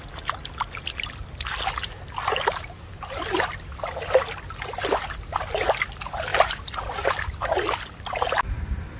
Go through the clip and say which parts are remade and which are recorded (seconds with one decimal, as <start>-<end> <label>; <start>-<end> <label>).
0.0-9.0 recorded